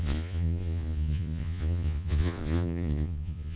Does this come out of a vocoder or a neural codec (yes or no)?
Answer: yes